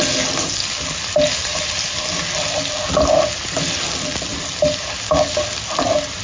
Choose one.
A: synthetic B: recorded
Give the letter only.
B